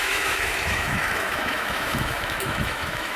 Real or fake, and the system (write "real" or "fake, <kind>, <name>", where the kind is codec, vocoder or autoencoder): fake, autoencoder, DAC-VAE